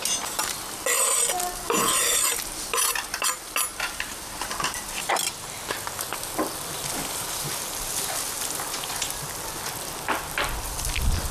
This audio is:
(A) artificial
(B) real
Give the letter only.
B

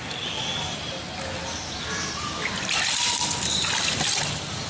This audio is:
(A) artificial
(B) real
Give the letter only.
B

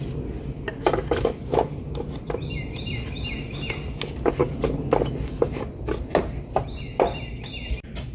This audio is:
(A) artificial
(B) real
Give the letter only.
B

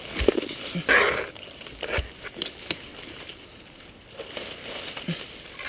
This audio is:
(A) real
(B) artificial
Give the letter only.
A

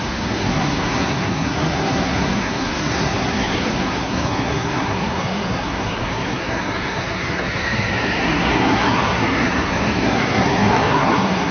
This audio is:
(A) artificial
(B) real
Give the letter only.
A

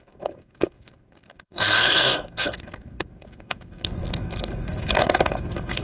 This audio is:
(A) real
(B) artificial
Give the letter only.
B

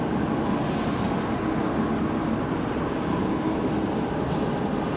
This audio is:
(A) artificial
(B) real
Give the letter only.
B